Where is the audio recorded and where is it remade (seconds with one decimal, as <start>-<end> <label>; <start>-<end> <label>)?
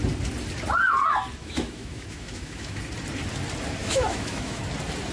0.0-1.4 recorded; 1.4-2.8 remade; 2.8-3.8 recorded; 3.8-4.6 remade; 4.6-5.1 recorded